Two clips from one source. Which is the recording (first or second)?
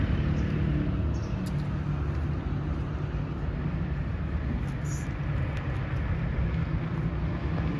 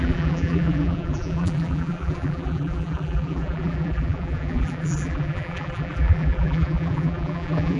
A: first